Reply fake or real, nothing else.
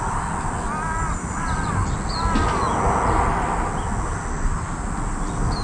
real